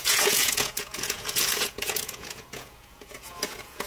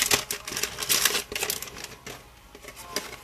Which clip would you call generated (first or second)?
first